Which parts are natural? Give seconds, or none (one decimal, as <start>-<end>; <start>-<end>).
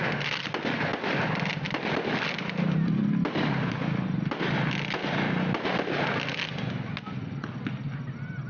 0.0-0.9; 4.4-8.5